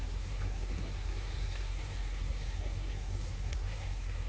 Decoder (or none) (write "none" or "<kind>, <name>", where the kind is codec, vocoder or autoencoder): codec, SNAC